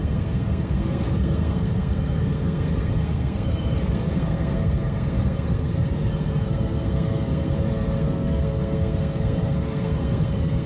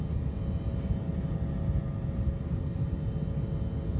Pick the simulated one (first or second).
first